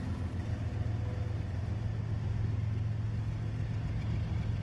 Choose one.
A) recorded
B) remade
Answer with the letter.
A